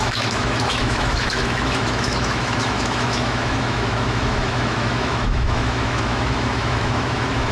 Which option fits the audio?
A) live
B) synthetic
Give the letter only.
B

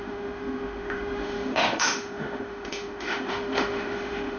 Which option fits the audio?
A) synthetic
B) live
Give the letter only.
A